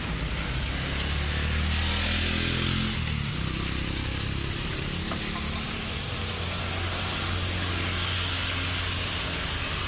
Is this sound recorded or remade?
recorded